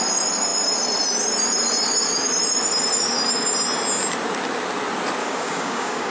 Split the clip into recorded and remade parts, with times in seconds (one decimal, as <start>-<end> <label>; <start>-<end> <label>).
0.0-5.2 recorded; 5.2-6.1 remade